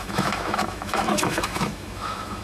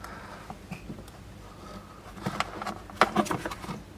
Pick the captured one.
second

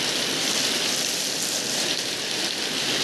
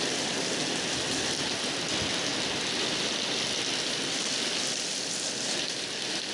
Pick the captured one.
second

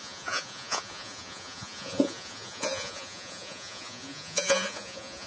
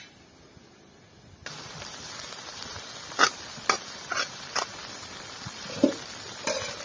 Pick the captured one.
second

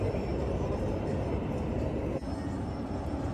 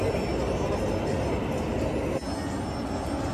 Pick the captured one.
second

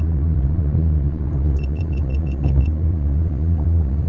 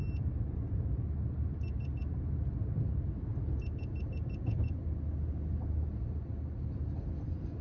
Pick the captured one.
second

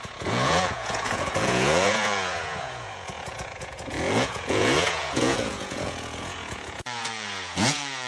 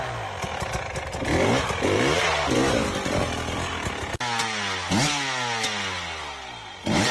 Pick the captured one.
second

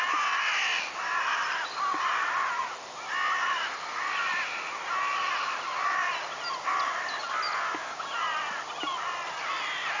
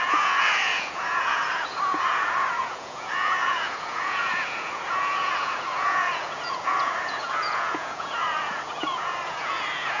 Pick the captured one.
first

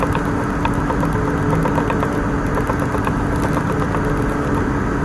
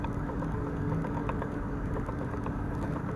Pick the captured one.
first